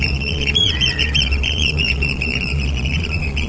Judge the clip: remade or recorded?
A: remade